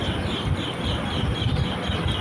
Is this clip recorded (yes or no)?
yes